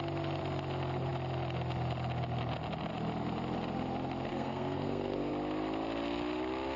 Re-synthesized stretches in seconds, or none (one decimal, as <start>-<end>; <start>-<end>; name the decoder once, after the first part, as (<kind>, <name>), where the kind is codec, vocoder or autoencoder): 4.3-5.3 (codec, SNAC)

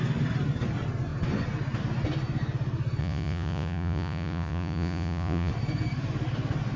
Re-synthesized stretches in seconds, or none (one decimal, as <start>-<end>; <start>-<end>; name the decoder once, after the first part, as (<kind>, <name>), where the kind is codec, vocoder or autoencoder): 3.0-5.5 (vocoder, Vocos)

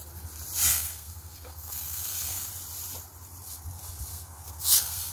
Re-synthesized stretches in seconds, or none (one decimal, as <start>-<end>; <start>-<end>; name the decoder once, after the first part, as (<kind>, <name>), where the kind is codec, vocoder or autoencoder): 0.7-2.5 (codec, SNAC); 4.1-5.1

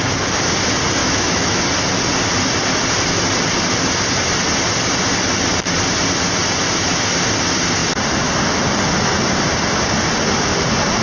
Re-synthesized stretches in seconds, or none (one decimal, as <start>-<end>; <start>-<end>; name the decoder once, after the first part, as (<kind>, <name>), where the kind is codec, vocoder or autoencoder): 1.0-1.6 (autoencoder, DAC-VAE)

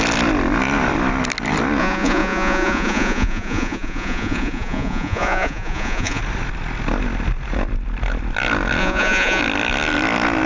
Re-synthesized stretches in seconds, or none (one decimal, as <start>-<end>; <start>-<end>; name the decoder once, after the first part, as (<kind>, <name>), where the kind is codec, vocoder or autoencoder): 1.8-6.2 (vocoder, Vocos); 8.8-9.4